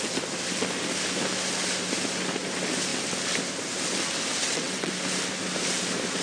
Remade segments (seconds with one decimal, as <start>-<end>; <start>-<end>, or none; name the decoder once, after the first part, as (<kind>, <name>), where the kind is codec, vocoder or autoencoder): 4.4-4.9 (vocoder, WaveNeXt)